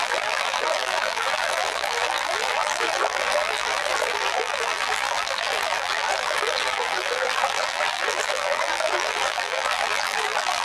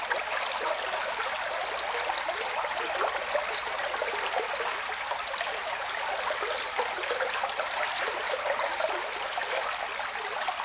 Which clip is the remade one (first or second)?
first